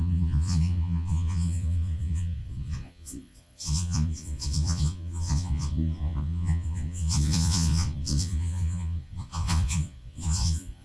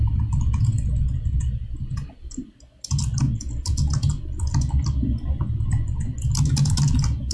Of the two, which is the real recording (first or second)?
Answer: second